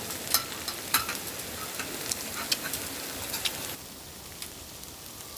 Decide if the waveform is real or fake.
real